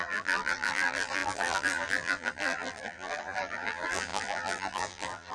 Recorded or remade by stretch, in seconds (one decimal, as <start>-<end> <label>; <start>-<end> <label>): 0.0-5.3 remade